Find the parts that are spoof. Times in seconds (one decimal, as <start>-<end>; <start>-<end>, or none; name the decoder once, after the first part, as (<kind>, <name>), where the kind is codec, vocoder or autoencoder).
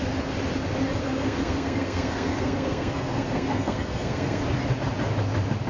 1.0-4.4 (codec, SNAC)